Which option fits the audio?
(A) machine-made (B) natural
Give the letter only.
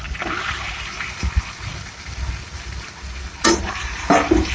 B